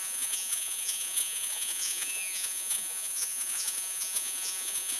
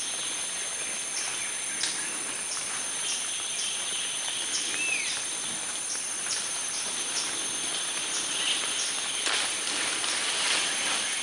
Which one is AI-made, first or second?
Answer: first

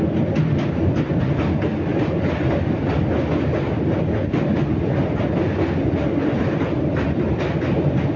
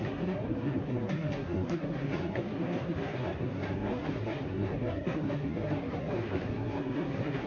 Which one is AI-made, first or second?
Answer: second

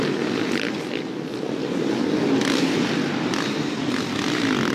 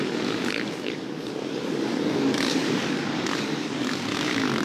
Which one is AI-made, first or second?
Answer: second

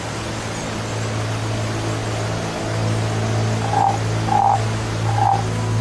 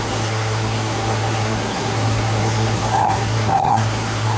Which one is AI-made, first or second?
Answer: second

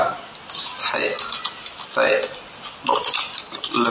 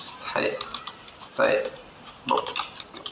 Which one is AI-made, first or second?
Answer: second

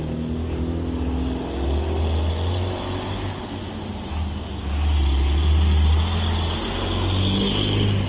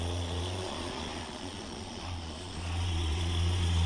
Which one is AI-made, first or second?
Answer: second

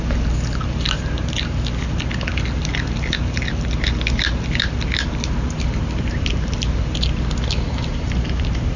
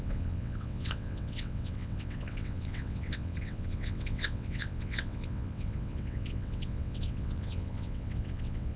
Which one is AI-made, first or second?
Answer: second